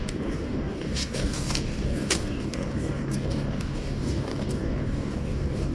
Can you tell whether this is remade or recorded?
remade